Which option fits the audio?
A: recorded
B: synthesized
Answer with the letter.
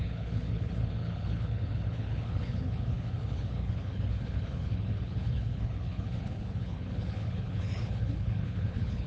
B